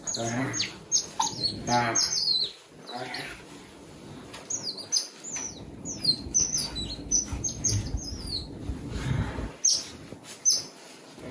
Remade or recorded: recorded